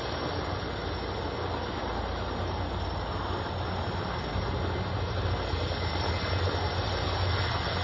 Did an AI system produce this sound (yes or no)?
no